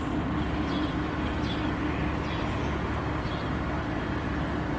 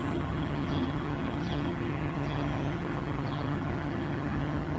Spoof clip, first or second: second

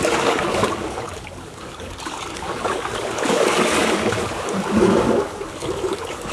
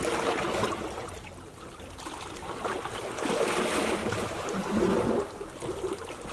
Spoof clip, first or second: first